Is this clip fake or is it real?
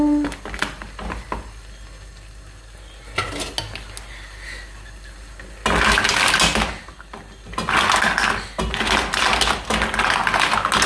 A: real